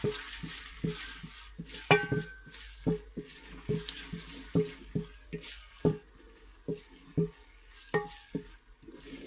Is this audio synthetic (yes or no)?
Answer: no